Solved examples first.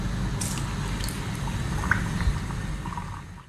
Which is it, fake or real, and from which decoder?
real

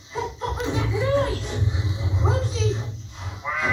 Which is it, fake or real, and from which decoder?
fake, vocoder, BigVGAN v2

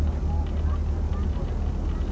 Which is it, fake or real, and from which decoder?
real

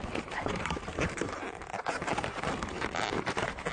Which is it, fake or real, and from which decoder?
fake, vocoder, BigVGAN v2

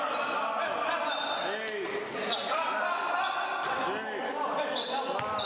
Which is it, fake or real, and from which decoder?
real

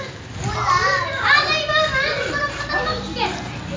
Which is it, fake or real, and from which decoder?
real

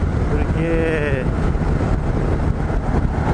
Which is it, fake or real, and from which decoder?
real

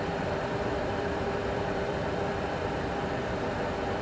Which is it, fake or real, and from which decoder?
fake, vocoder, BigVGAN v2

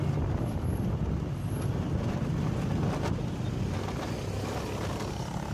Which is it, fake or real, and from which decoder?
real